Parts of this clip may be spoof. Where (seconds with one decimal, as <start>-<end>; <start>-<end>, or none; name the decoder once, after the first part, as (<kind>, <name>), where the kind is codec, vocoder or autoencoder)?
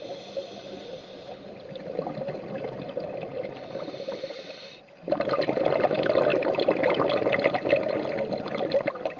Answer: none